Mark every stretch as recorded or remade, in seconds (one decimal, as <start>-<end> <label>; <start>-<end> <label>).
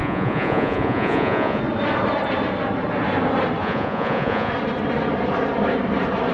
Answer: 0.0-1.6 remade; 1.6-3.6 recorded; 3.6-4.5 remade; 4.5-6.3 recorded